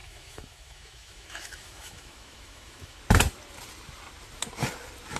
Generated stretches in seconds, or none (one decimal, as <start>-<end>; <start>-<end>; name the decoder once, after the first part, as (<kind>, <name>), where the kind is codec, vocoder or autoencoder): 0.0-3.0 (autoencoder, DAC-VAE)